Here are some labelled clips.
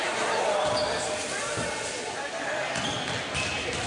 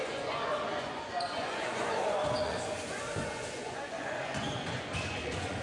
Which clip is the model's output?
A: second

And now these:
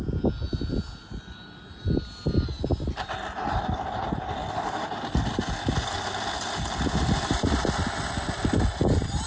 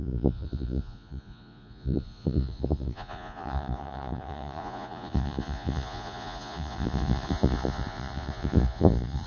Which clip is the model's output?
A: second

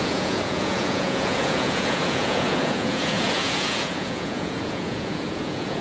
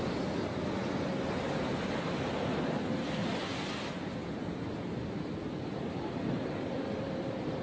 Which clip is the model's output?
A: first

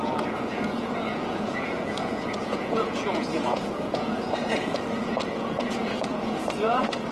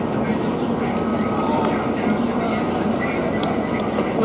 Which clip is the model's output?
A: first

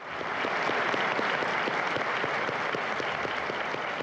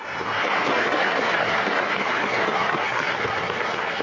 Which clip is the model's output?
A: second